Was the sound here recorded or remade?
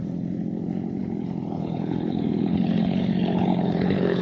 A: remade